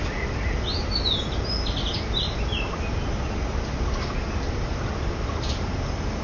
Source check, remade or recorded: recorded